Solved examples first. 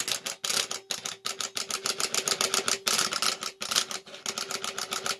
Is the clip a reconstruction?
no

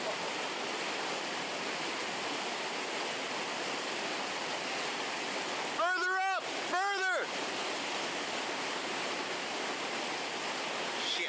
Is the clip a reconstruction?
no